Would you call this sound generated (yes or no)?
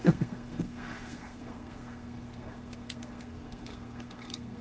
yes